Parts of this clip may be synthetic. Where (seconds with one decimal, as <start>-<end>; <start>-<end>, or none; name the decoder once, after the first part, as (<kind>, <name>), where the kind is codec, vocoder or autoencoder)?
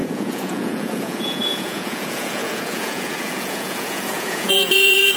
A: 0.0-5.2 (vocoder, Vocos)